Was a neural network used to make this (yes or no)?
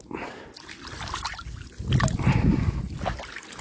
no